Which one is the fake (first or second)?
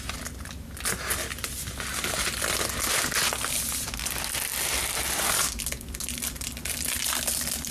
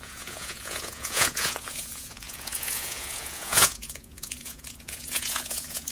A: second